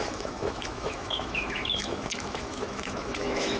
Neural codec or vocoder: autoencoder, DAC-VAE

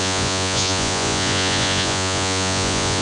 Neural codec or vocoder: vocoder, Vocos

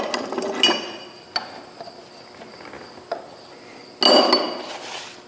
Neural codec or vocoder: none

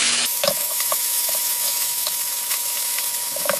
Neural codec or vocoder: autoencoder, DAC-VAE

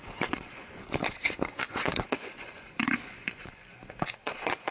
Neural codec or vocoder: vocoder, Vocos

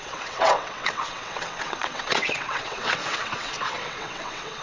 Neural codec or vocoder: vocoder, WaveNeXt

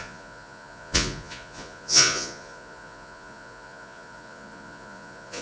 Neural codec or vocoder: vocoder, Vocos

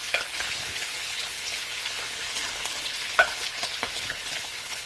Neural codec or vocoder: codec, HILCodec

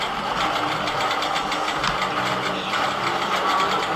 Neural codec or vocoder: none